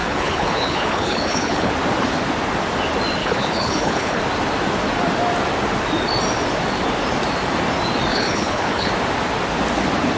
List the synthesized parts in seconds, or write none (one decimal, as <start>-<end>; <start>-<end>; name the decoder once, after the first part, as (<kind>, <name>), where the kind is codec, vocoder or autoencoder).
0.0-1.7 (codec, HILCodec); 3.2-4.2; 8.1-8.9